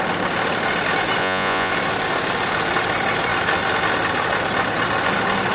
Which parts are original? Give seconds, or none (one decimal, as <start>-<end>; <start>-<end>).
0.0-1.2; 1.7-5.5